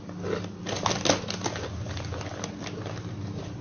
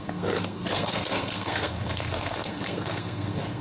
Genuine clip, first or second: first